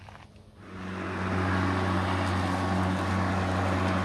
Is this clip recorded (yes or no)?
yes